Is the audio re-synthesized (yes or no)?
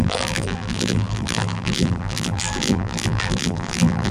yes